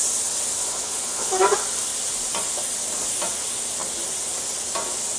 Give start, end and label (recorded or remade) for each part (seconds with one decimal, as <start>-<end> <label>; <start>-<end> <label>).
0.0-0.6 recorded; 0.6-1.3 remade; 1.3-5.2 recorded